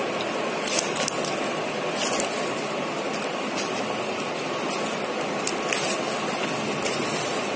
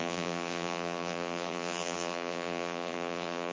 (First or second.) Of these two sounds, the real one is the first